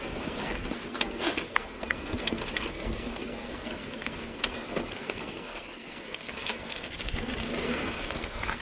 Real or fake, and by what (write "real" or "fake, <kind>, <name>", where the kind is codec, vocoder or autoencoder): fake, codec, SNAC